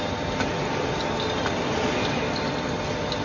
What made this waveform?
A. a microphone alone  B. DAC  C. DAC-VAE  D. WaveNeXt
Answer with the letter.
A